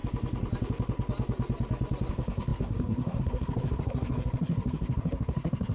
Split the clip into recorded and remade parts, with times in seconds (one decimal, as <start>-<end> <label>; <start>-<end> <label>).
0.0-2.1 recorded; 2.1-5.7 remade